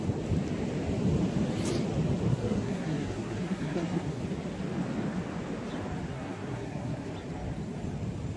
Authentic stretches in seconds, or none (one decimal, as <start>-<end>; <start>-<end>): 0.0-2.3; 4.2-6.1; 7.1-8.4